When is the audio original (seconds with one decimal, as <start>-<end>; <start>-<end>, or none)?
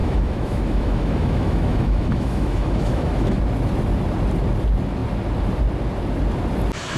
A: 3.4-7.0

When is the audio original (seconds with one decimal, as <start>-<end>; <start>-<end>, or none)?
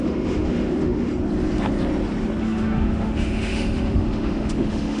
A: 1.1-2.4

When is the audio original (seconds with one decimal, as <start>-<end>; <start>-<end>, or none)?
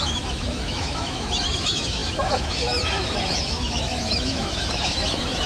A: none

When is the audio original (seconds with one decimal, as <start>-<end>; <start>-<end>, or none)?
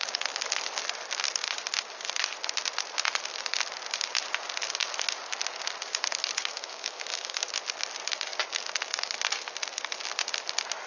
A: 0.0-6.5; 7.5-10.9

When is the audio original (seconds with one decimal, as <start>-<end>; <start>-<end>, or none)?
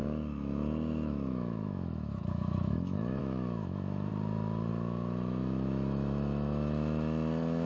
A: 4.1-4.7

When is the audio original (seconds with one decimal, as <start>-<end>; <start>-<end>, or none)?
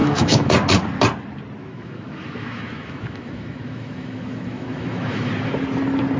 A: 0.5-1.6; 5.3-6.2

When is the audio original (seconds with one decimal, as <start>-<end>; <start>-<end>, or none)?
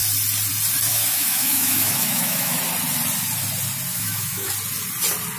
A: 0.0-0.9; 2.6-3.9; 4.5-5.4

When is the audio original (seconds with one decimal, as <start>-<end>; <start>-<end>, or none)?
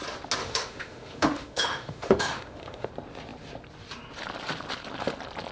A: 0.0-0.4; 2.9-5.5